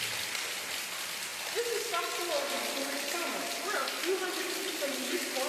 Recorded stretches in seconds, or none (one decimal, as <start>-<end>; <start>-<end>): 0.0-5.5